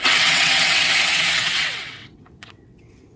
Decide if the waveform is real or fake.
fake